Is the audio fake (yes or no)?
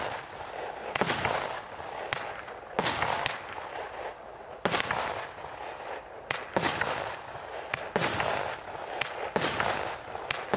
no